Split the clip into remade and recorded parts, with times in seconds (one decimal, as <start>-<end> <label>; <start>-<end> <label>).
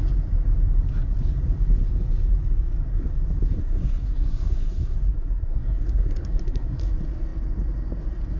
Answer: 0.0-3.6 recorded; 3.6-6.8 remade; 6.8-8.4 recorded